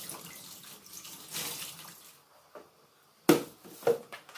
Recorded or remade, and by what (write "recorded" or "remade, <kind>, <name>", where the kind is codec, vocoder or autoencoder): recorded